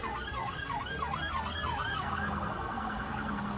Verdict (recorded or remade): remade